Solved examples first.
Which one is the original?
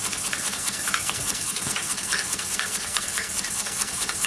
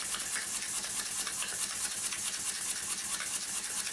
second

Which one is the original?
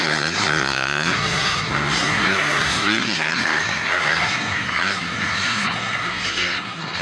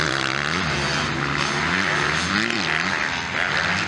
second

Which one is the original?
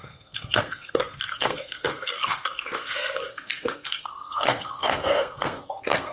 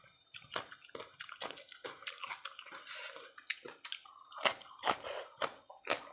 second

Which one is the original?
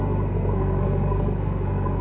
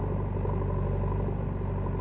second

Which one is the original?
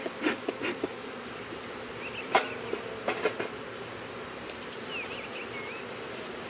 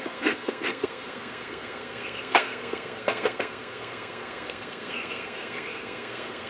first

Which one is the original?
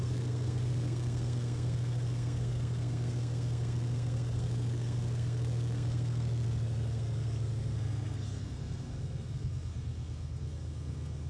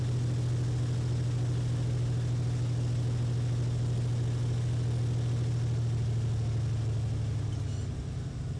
second